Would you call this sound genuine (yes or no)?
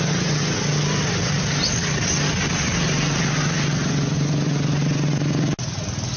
yes